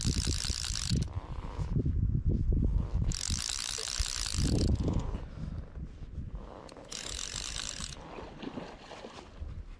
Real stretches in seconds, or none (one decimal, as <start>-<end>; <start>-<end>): 0.0-9.8